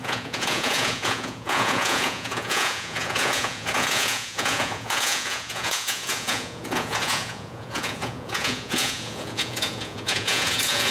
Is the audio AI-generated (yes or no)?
yes